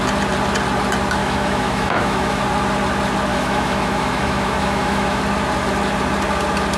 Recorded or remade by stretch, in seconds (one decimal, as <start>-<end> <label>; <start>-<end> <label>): 0.0-1.2 recorded; 1.2-2.4 remade; 2.4-3.3 recorded; 3.3-5.2 remade; 5.2-6.8 recorded